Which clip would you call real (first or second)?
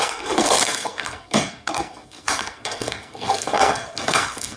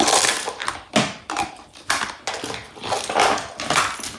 second